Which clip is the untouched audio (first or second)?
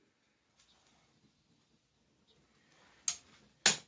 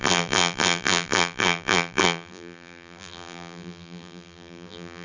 first